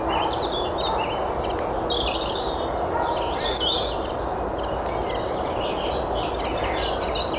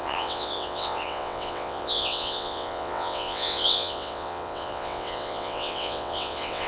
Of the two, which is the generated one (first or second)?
second